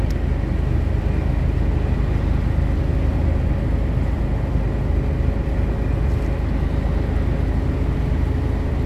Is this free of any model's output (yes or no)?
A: yes